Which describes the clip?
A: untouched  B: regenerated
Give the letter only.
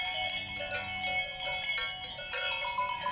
A